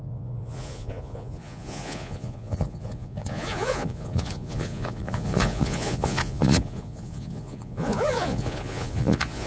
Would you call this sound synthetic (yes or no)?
yes